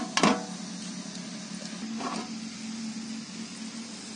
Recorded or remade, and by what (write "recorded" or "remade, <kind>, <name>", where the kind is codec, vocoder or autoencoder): recorded